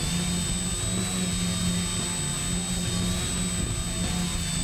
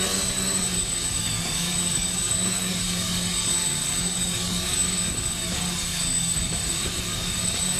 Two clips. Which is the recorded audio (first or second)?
first